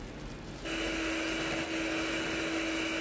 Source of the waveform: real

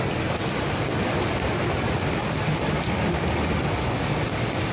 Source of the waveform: fake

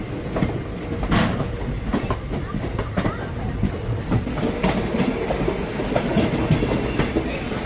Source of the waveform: real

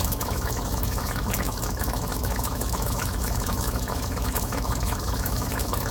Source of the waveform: fake